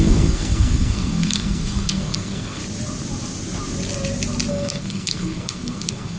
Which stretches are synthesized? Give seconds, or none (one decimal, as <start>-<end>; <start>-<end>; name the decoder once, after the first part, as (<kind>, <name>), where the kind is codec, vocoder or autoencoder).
0.0-2.6 (codec, SNAC); 4.5-6.2